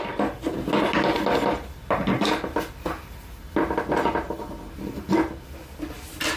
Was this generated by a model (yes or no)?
no